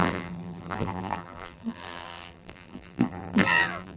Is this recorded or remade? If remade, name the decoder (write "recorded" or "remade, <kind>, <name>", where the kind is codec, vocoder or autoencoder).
remade, vocoder, BigVGAN v2